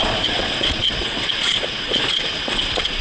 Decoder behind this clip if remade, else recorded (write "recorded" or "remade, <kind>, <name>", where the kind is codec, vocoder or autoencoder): remade, vocoder, Vocos